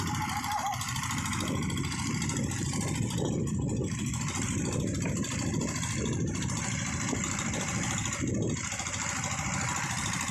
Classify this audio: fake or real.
fake